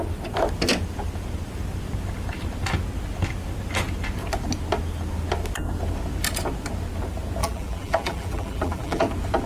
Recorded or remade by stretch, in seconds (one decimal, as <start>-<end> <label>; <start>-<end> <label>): 0.0-7.4 recorded; 7.4-9.1 remade; 9.1-9.5 recorded